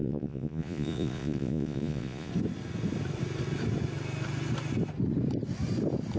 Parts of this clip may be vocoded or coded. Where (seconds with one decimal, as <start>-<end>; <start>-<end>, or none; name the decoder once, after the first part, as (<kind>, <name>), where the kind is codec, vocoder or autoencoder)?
0.0-2.3 (vocoder, Vocos)